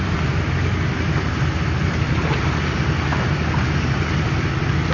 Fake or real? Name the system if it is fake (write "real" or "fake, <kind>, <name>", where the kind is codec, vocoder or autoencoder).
real